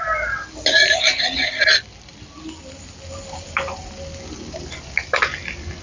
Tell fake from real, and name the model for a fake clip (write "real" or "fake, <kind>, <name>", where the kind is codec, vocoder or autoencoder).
real